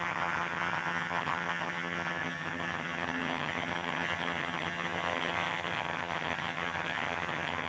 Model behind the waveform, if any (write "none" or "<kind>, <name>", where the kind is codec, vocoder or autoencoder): vocoder, HiFi-GAN